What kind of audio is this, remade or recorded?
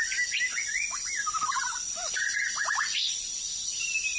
recorded